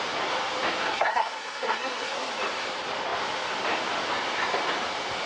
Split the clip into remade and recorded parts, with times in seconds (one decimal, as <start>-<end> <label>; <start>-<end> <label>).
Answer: 0.0-0.8 recorded; 0.8-2.3 remade; 2.3-5.3 recorded